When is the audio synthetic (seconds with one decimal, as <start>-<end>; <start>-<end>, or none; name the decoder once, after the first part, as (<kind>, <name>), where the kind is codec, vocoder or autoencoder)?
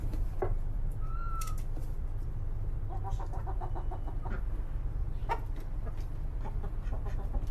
0.0-1.0 (vocoder, BigVGAN v2)